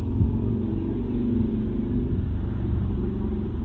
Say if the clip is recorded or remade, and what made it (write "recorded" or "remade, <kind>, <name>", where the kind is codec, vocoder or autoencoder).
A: recorded